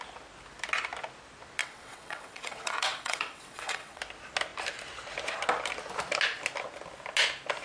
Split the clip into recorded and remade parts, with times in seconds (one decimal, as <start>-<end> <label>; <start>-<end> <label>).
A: 0.0-1.6 recorded; 1.6-4.0 remade; 4.0-7.6 recorded